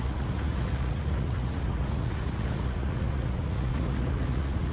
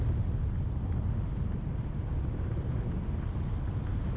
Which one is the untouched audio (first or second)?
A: second